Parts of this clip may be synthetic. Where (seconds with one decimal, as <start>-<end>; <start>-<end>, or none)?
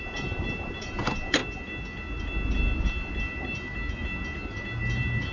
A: none